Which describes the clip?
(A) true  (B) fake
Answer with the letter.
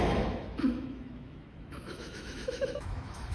B